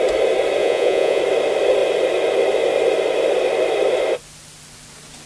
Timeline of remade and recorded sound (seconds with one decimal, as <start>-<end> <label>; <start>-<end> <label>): 0.0-0.6 recorded; 0.6-1.2 remade; 1.2-5.3 recorded